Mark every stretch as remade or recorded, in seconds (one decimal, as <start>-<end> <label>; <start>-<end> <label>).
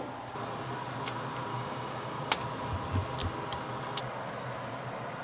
0.0-1.5 recorded; 1.5-2.3 remade; 2.3-5.2 recorded